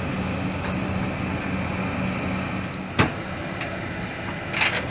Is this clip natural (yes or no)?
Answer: yes